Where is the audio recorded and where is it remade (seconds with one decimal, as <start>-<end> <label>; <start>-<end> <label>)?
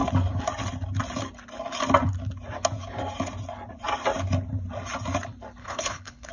0.0-5.6 recorded; 5.6-6.3 remade